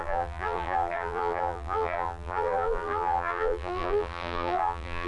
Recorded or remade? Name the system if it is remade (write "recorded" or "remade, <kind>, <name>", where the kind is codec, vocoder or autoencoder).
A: remade, vocoder, BigVGAN v2